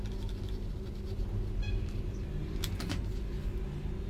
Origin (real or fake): real